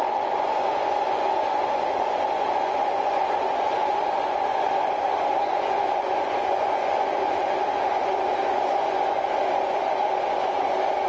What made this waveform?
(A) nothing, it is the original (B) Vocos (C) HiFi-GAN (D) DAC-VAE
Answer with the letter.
B